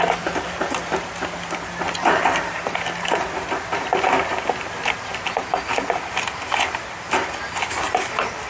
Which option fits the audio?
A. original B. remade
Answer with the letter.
A